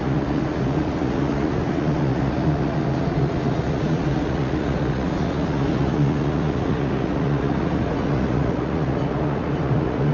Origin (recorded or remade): remade